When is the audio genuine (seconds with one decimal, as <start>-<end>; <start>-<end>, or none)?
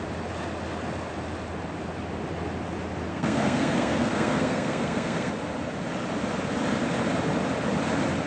0.0-3.1; 5.3-8.3